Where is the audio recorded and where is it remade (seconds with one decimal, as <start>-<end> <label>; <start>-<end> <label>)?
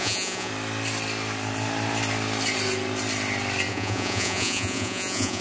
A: 0.0-0.5 remade; 0.5-3.7 recorded; 3.7-5.4 remade